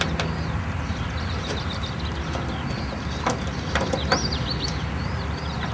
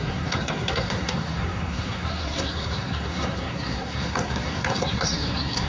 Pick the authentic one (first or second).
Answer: first